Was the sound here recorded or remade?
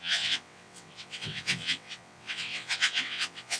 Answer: remade